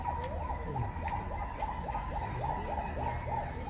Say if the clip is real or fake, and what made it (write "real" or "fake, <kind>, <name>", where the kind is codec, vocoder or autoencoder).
real